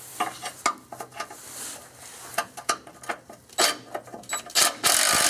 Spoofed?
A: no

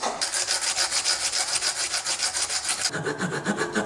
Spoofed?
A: no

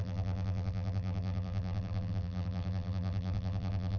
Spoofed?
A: yes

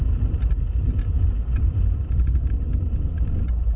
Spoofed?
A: no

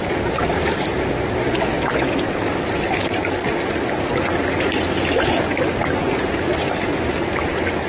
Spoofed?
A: yes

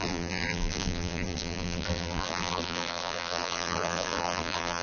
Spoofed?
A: yes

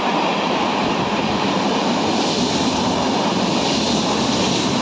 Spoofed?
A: yes